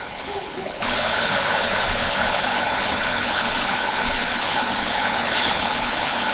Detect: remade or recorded remade